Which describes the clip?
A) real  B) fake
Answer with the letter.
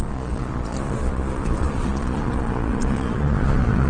B